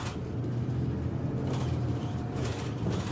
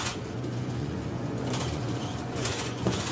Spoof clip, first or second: second